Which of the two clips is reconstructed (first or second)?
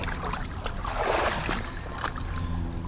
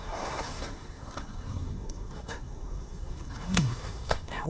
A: second